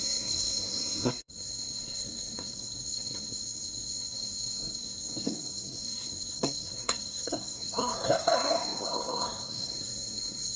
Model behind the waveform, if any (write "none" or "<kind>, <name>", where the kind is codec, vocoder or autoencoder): codec, SNAC